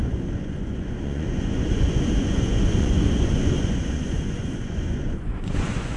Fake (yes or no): yes